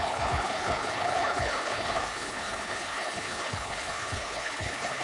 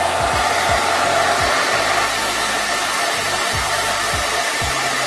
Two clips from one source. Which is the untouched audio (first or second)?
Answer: second